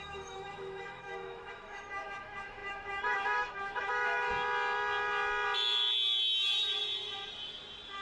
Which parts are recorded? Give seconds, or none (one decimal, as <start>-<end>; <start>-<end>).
4.3-8.0